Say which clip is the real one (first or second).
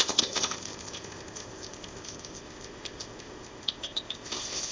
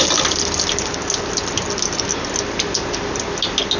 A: second